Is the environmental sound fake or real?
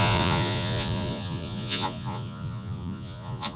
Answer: fake